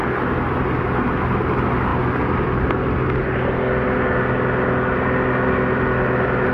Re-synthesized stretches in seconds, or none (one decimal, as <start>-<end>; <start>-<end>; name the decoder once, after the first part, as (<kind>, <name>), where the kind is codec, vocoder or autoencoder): none